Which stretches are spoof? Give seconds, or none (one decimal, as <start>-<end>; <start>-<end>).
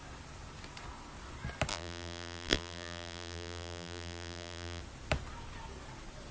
1.7-4.8